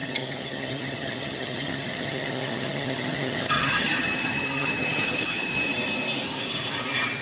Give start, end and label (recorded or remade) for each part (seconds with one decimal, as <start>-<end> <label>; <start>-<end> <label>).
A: 0.0-5.5 remade; 5.5-7.2 recorded